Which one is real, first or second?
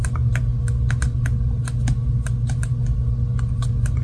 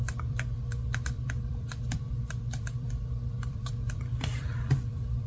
first